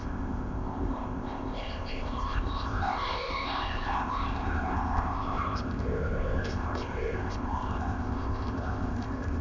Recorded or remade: remade